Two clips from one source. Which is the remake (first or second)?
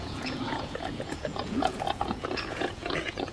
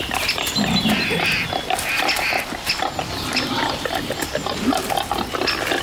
first